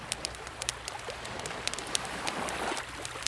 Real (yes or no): no